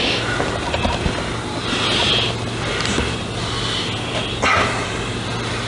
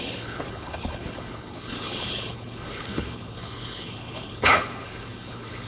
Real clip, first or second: first